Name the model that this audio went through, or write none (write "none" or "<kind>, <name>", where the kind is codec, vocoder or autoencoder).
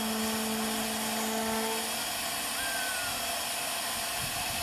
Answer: none